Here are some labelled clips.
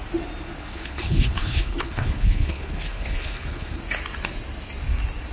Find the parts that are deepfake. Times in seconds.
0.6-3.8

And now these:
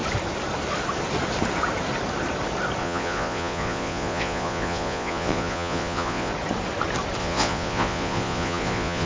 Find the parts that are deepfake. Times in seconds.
2.8-6.3; 7.2-9.1

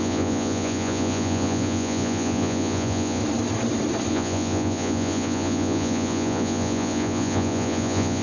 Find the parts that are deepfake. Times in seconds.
0.0-3.2; 4.1-8.2

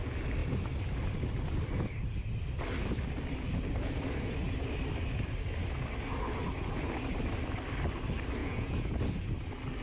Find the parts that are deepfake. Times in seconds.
8.4-8.9

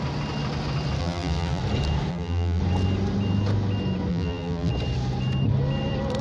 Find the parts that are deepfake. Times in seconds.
1.0-1.6; 2.1-2.6; 4.1-4.7

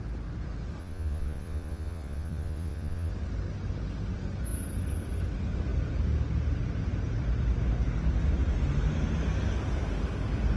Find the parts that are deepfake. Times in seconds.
0.8-3.1

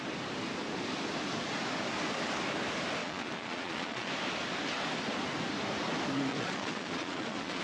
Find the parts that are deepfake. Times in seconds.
3.0-4.1; 6.3-7.6